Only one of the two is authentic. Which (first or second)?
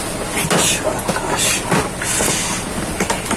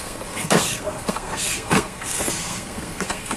first